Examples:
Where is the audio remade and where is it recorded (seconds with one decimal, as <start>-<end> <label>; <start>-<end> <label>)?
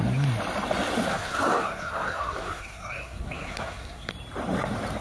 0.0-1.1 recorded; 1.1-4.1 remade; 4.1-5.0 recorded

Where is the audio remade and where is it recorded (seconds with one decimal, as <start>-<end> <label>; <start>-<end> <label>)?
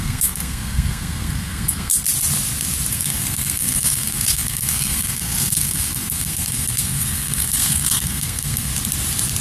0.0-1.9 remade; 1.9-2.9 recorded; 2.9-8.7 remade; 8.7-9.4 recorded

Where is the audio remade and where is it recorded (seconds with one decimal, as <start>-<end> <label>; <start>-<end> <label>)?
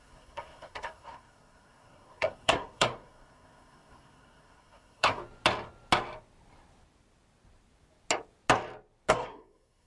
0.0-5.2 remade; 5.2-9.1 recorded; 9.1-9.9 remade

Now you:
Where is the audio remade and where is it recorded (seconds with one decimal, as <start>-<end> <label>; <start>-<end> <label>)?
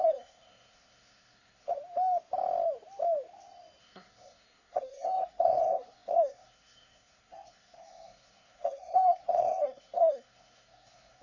0.0-1.7 remade; 1.7-3.8 recorded; 3.8-11.2 remade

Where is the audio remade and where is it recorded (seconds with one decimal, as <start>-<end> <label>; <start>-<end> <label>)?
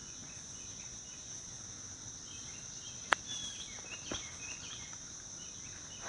0.0-1.6 remade; 1.6-4.3 recorded; 4.3-5.2 remade; 5.2-6.1 recorded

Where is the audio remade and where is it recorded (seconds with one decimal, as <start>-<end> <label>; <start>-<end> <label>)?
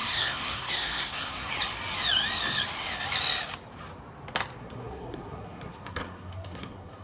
0.0-1.5 remade; 1.5-4.6 recorded; 4.6-7.0 remade